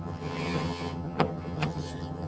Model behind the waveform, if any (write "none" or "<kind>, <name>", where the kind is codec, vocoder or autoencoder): vocoder, HiFi-GAN